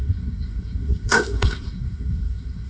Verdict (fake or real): fake